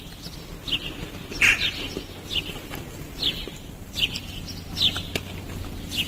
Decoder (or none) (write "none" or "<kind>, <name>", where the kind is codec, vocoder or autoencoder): none